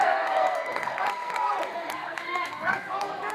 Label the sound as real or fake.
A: fake